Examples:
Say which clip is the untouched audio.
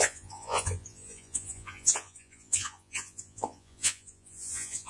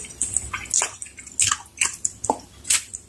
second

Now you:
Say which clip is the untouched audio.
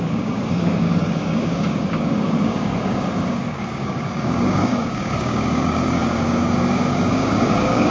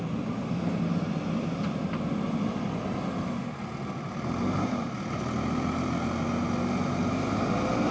second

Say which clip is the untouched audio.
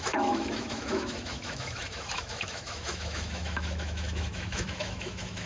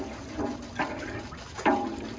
second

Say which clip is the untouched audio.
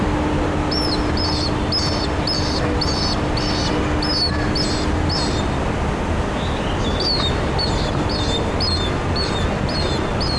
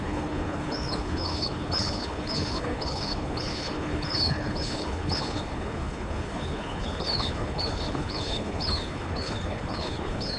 first